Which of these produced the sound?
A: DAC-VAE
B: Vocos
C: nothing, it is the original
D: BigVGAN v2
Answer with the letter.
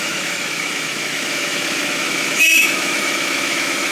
A